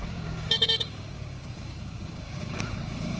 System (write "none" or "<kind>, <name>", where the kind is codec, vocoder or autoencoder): codec, DAC